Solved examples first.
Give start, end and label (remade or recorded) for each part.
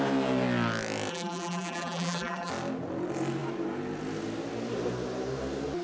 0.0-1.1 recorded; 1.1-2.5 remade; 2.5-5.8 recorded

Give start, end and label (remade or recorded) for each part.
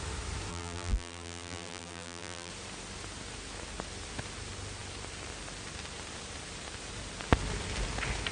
0.0-0.5 recorded; 0.5-2.5 remade; 2.5-8.3 recorded